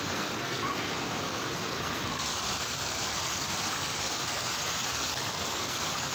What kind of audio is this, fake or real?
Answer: fake